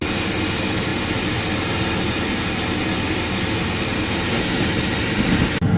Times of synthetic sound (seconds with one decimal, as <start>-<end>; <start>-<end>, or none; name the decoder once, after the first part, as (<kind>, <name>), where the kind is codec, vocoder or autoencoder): none